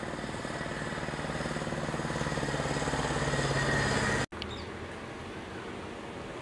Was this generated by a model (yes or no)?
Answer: no